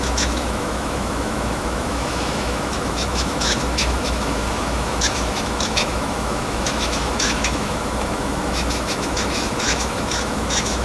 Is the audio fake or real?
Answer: fake